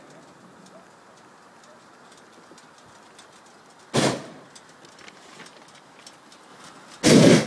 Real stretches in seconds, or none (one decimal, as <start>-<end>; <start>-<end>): 0.0-7.5